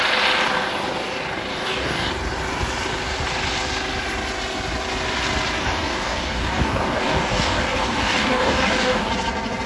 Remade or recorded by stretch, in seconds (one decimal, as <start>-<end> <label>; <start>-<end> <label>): 0.0-1.5 recorded; 1.5-2.1 remade; 2.1-5.6 recorded; 5.6-9.1 remade; 9.1-9.7 recorded